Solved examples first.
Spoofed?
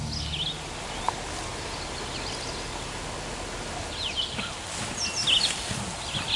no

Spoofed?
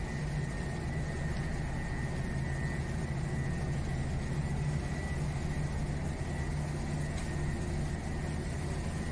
no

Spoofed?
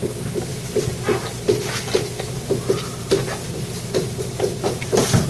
no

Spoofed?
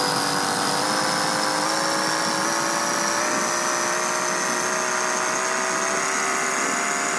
no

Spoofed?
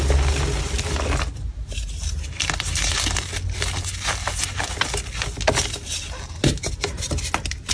no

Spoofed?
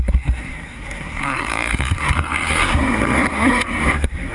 yes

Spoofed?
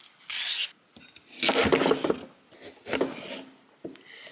no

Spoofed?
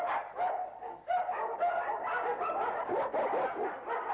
no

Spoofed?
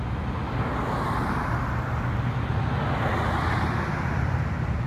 no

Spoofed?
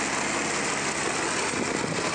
no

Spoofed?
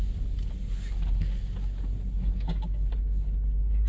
no